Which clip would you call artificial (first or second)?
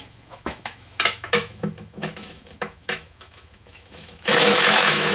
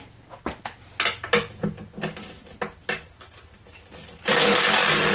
first